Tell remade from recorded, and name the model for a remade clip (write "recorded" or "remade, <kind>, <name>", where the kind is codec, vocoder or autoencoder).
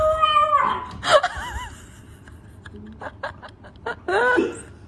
recorded